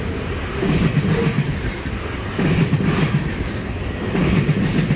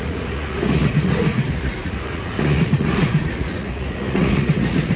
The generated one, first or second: second